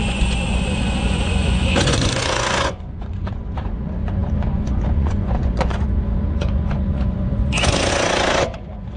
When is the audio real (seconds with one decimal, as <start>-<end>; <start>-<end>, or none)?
none